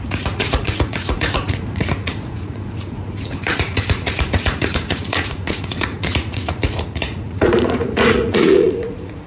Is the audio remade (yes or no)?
yes